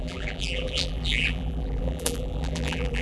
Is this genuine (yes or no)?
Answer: no